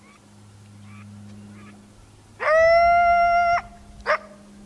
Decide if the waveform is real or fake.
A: real